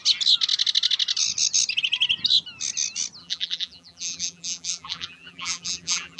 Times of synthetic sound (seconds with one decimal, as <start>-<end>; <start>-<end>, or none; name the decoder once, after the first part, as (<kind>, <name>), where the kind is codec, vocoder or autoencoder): 3.2-6.2 (vocoder, BigVGAN v2)